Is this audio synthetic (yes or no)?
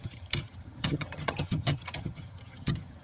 yes